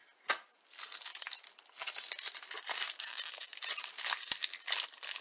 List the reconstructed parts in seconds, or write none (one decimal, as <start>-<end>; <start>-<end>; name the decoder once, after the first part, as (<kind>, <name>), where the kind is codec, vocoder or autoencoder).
none